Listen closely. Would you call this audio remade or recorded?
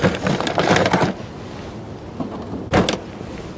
recorded